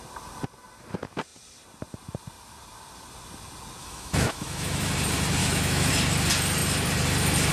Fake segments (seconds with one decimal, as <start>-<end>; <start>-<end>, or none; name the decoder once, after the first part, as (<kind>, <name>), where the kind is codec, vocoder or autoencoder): 3.8-4.9 (autoencoder, DAC-VAE); 5.4-5.9